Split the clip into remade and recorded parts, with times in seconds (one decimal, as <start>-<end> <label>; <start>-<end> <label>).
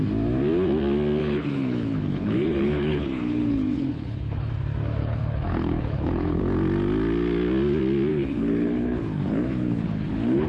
0.0-1.2 recorded; 1.2-4.5 remade; 4.5-5.0 recorded; 5.0-6.4 remade; 6.4-8.1 recorded; 8.1-10.5 remade